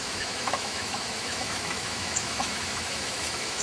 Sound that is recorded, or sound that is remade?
remade